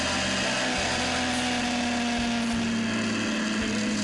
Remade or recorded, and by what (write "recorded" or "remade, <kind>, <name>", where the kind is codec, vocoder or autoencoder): recorded